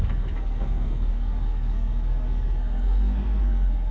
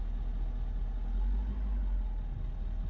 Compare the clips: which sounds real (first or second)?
second